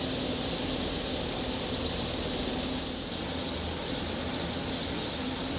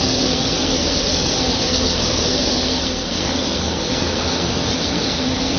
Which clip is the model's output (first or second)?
second